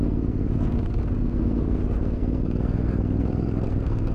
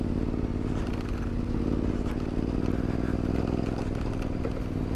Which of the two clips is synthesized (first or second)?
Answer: first